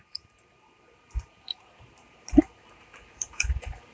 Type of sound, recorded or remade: remade